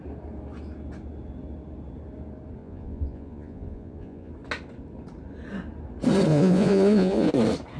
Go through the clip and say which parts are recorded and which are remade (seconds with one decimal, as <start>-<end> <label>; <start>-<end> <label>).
0.0-2.6 recorded; 2.6-4.3 remade; 4.3-6.3 recorded; 6.3-7.3 remade; 7.3-7.8 recorded